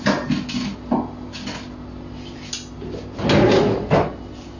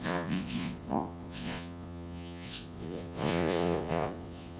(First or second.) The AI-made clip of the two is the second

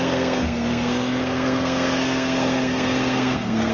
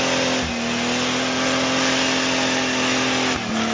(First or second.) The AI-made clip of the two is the first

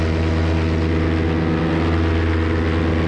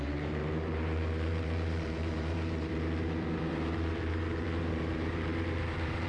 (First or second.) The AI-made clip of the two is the second